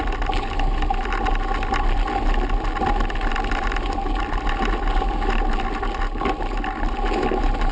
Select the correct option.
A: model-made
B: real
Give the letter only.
B